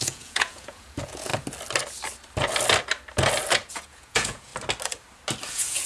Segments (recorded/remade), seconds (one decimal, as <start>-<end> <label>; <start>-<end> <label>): 0.0-1.3 remade; 1.3-3.7 recorded; 3.7-4.5 remade; 4.5-5.5 recorded; 5.5-5.9 remade

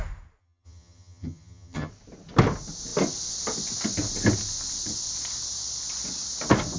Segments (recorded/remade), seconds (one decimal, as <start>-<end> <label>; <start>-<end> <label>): 0.0-0.4 recorded; 0.4-1.9 remade; 1.9-6.8 recorded

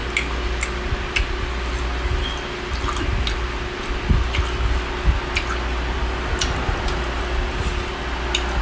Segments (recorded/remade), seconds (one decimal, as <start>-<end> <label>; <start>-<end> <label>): 0.0-8.6 recorded

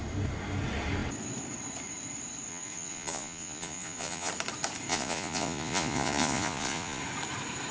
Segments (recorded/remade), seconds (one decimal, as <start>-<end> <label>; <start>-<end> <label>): 0.0-2.5 recorded; 2.5-4.3 remade; 4.3-4.9 recorded; 4.9-7.0 remade; 7.0-7.7 recorded

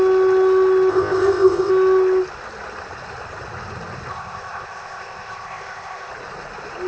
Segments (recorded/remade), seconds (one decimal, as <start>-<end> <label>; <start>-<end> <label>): 0.0-0.9 recorded; 0.9-1.7 remade; 1.7-4.1 recorded; 4.1-6.1 remade; 6.1-6.9 recorded

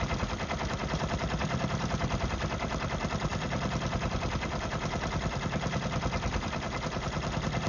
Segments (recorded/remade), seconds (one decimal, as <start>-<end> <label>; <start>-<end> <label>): 0.0-7.7 recorded